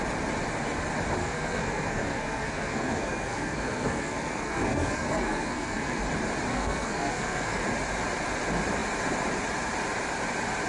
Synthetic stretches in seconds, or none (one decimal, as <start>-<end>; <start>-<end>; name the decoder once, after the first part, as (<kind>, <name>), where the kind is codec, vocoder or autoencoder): 1.2-6.0 (codec, SNAC); 6.5-7.6